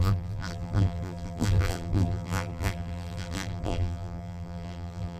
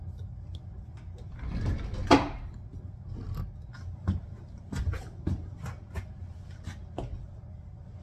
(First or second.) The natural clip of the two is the second